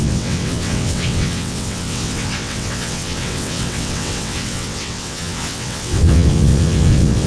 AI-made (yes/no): yes